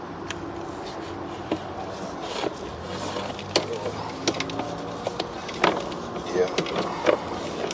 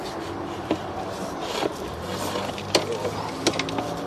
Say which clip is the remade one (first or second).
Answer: second